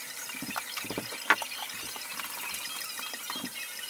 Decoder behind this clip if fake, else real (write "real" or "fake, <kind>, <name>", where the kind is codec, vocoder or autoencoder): fake, vocoder, BigVGAN v2